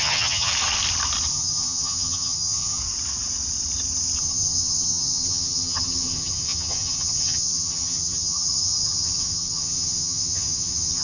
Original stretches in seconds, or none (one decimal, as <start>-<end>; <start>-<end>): 0.5-1.3; 2.8-4.2